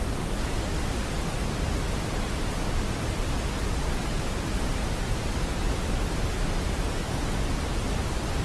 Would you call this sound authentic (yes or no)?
yes